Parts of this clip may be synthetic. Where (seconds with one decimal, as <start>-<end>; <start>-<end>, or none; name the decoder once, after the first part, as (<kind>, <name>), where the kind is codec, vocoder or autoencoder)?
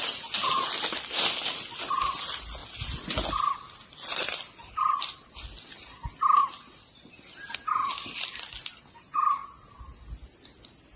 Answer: 6.4-7.1 (vocoder, BigVGAN v2)